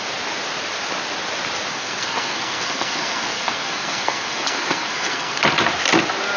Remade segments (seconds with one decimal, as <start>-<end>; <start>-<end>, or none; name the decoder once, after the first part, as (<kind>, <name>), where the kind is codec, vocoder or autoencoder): 1.7-5.4 (codec, SNAC)